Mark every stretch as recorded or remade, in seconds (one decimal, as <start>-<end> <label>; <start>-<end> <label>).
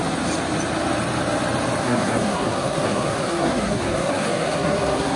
0.0-1.8 recorded; 1.8-5.2 remade